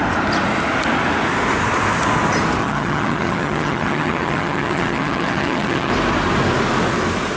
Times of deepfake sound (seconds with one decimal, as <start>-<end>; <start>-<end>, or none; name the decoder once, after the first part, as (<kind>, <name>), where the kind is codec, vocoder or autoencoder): 2.6-5.9 (vocoder, HiFi-GAN)